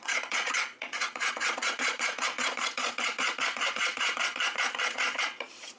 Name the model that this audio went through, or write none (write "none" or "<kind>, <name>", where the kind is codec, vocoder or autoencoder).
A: vocoder, Vocos